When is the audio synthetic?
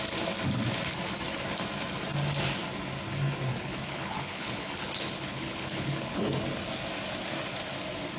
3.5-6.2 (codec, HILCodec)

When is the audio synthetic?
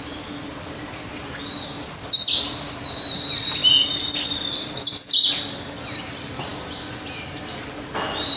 none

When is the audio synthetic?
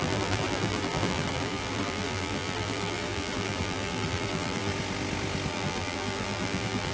0.0-4.7 (vocoder, BigVGAN v2); 5.5-6.9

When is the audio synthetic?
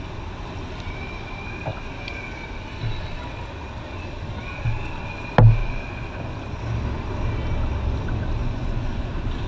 5.6-6.6 (vocoder, Vocos); 8.4-9.1